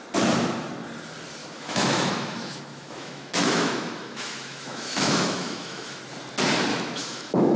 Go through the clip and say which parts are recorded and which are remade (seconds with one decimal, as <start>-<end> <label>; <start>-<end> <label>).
0.0-1.4 recorded; 1.4-6.0 remade; 6.0-6.7 recorded; 6.7-7.6 remade